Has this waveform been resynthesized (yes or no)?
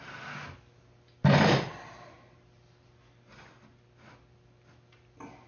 no